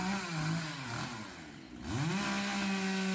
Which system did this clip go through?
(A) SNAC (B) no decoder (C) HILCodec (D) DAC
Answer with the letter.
B